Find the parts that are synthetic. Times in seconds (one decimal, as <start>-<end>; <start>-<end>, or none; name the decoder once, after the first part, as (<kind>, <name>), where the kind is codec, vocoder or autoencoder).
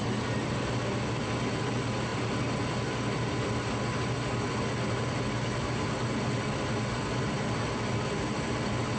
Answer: none